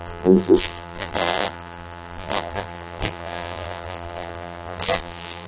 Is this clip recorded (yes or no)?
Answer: no